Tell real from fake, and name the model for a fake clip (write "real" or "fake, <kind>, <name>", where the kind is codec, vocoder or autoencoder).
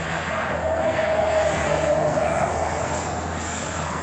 fake, codec, SNAC